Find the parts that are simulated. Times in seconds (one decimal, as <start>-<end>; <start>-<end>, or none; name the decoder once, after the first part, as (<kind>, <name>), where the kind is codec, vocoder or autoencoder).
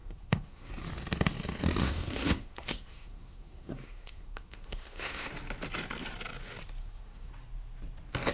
0.0-0.7 (codec, SNAC); 1.8-5.3; 6.8-7.3